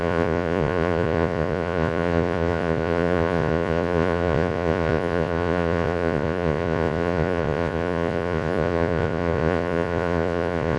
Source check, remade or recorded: remade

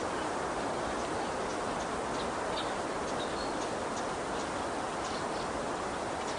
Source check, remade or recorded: recorded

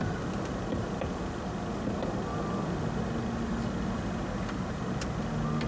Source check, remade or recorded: recorded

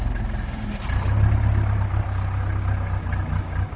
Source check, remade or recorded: recorded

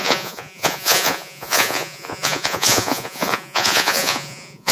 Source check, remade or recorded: remade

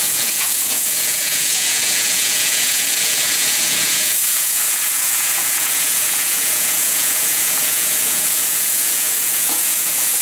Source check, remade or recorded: remade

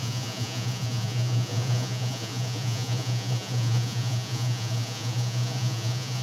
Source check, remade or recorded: remade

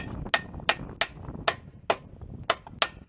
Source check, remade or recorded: recorded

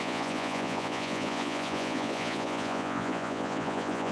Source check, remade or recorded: remade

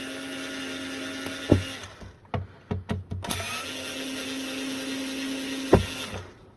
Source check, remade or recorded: recorded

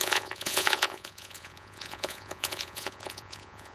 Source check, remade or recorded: remade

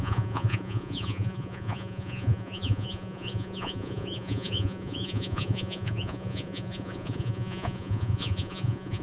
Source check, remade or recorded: remade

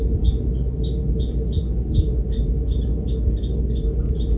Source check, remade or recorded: recorded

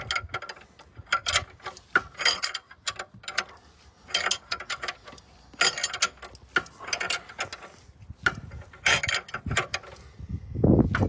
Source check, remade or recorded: recorded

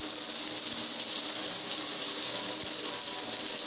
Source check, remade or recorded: recorded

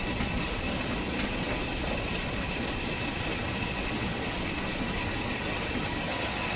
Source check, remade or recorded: remade